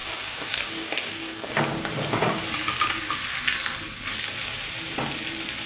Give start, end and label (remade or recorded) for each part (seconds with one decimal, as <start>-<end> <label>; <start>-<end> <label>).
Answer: 0.0-1.6 remade; 1.6-5.7 recorded